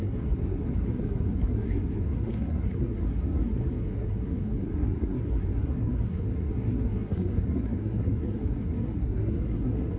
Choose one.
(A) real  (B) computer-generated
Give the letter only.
B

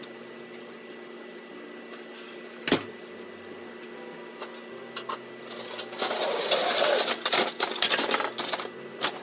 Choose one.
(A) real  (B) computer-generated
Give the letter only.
A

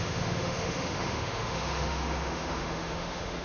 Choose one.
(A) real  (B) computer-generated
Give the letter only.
B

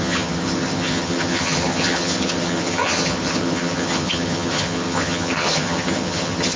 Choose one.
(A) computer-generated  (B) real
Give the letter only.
A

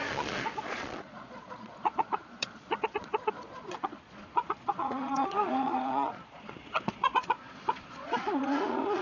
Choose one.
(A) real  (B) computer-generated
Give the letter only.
B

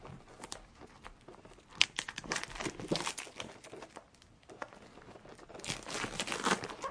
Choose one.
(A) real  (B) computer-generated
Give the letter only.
A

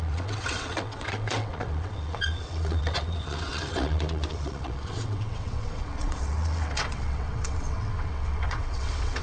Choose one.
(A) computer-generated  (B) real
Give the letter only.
A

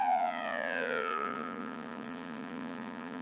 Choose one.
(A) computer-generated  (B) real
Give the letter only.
A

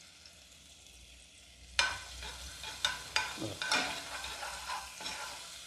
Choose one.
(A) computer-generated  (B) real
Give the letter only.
B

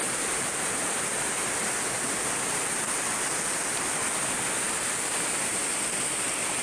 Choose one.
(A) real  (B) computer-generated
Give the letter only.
A